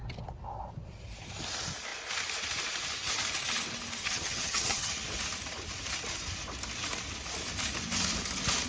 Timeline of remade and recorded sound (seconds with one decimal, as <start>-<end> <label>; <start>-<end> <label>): 0.0-4.0 recorded; 4.0-4.9 remade; 4.9-8.7 recorded

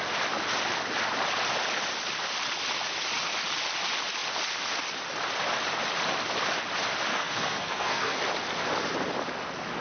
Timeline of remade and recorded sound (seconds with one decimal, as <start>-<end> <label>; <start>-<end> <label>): 0.0-7.1 recorded; 7.1-8.2 remade; 8.2-9.8 recorded

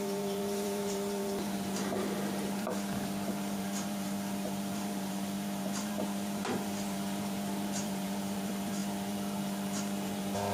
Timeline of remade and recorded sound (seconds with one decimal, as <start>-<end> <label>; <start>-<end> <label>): 0.0-10.5 remade

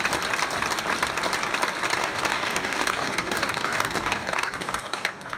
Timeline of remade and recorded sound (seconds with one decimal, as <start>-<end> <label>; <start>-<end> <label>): 0.0-2.0 recorded; 2.0-5.4 remade

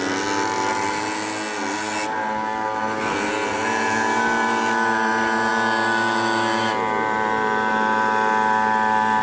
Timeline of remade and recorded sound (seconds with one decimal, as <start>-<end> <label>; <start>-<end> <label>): 0.0-9.2 recorded